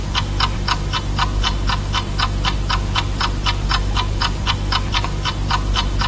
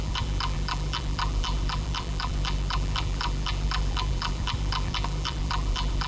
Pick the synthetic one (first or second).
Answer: second